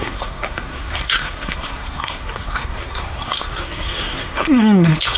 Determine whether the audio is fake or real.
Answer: fake